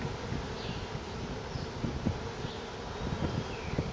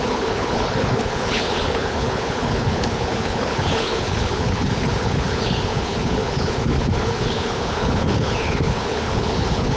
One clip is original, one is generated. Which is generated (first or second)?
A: second